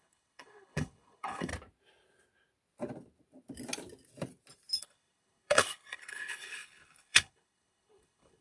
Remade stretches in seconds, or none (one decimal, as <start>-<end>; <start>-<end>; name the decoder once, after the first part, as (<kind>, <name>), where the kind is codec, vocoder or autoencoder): 0.0-1.5 (codec, HILCodec); 4.8-8.4